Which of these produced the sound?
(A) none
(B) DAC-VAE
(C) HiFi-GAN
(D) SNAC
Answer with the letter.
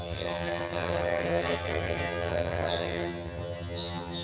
C